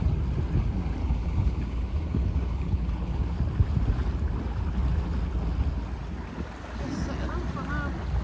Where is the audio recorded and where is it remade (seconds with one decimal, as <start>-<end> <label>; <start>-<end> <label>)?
0.0-1.0 recorded; 1.0-3.2 remade; 3.2-8.2 recorded